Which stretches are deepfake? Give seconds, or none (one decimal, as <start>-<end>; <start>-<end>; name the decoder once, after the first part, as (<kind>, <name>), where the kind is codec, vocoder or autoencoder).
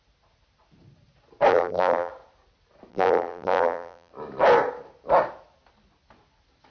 1.5-2.1 (vocoder, BigVGAN v2); 2.9-4.1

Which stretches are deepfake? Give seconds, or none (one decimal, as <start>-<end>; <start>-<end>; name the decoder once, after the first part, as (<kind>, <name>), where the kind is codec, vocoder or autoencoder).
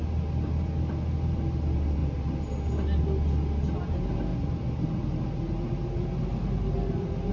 none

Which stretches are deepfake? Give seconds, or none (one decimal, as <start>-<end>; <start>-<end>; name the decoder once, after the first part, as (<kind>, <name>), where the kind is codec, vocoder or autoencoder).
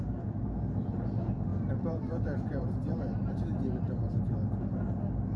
1.5-4.2 (vocoder, BigVGAN v2)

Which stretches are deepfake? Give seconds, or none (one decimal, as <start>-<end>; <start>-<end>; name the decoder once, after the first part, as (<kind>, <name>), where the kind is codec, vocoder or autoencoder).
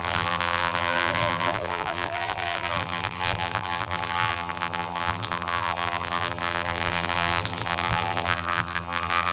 0.0-9.3 (vocoder, BigVGAN v2)